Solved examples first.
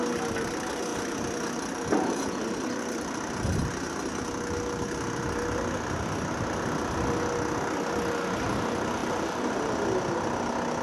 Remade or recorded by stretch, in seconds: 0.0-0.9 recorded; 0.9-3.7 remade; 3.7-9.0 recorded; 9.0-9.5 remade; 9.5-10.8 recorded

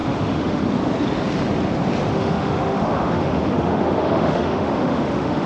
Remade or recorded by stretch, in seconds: 0.0-0.6 remade; 0.6-2.1 recorded; 2.1-5.5 remade

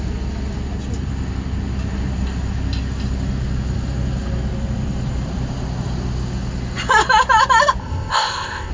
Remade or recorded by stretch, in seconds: 0.0-7.8 recorded; 7.8-8.7 remade

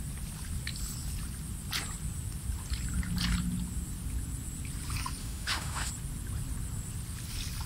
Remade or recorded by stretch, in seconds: 0.0-5.2 recorded; 5.2-5.9 remade; 5.9-7.7 recorded

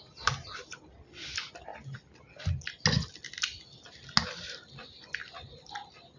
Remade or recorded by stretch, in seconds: 0.0-6.2 recorded

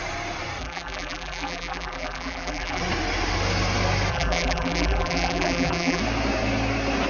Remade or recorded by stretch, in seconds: 0.0-0.6 recorded; 0.6-2.8 remade; 2.8-4.1 recorded; 4.1-6.0 remade; 6.0-7.1 recorded

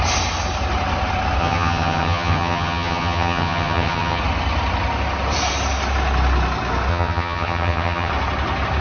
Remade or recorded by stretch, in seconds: 0.0-1.4 recorded; 1.4-4.2 remade; 4.2-6.9 recorded; 6.9-8.1 remade; 8.1-8.8 recorded